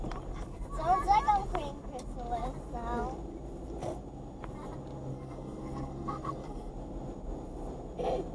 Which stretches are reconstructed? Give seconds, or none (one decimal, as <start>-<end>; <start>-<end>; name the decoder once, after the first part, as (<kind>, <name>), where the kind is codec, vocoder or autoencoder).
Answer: 5.1-6.7 (codec, SNAC)